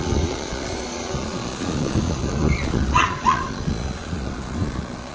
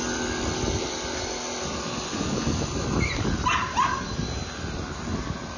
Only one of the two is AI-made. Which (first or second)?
first